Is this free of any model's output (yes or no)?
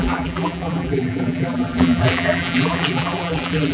no